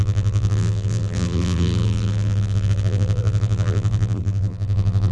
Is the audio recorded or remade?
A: remade